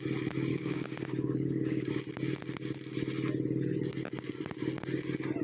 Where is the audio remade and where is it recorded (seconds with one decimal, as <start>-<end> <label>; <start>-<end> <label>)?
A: 0.0-0.5 recorded; 0.5-1.9 remade; 1.9-5.4 recorded